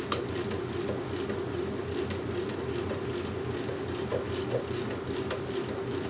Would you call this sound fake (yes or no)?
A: no